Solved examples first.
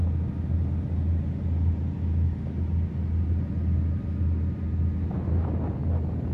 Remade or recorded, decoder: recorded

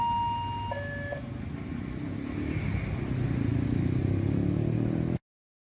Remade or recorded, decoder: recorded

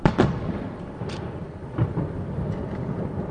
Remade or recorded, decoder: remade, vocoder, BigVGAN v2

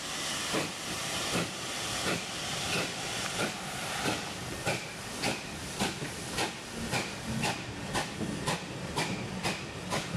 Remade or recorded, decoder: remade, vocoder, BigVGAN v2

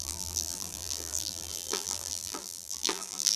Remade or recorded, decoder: remade, vocoder, BigVGAN v2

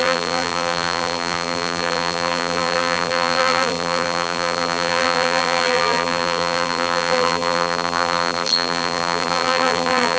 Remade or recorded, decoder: remade, vocoder, BigVGAN v2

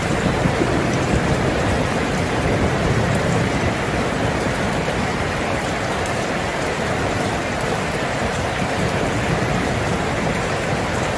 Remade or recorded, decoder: remade, vocoder, BigVGAN v2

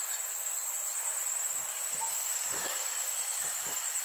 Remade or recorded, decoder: recorded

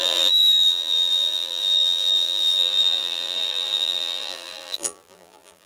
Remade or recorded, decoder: remade, vocoder, BigVGAN v2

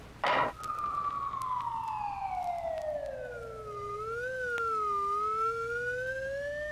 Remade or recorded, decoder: recorded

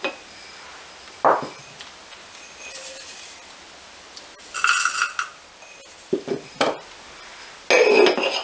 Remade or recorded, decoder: recorded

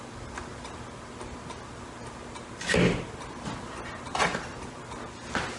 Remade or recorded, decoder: recorded